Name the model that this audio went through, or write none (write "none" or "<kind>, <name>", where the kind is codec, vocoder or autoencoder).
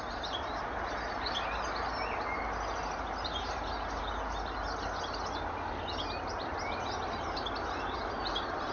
none